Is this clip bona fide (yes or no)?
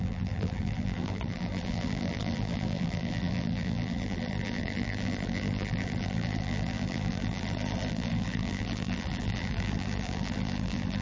no